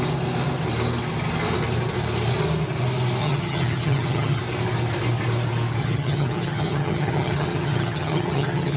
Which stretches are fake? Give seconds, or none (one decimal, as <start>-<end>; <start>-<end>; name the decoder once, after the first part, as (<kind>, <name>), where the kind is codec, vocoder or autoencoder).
3.2-4.4 (vocoder, HiFi-GAN); 5.8-8.8

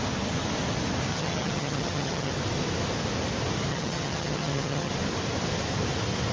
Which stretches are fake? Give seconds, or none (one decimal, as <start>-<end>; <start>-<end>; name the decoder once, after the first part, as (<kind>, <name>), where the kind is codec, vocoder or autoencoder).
1.1-2.3 (vocoder, HiFi-GAN); 3.7-4.9